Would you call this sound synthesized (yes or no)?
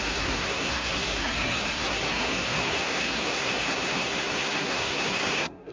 yes